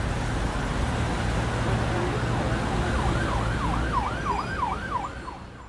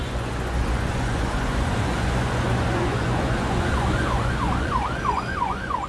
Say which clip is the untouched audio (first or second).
first